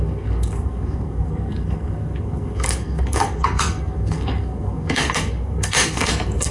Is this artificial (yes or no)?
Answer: yes